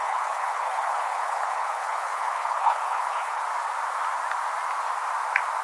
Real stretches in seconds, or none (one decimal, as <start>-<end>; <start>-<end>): 3.4-5.6